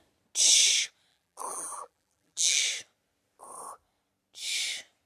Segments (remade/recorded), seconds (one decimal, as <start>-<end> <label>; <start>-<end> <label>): 0.0-1.1 recorded; 1.1-2.6 remade; 2.6-5.1 recorded